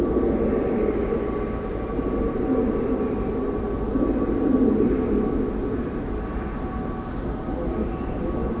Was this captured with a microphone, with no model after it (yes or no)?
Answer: yes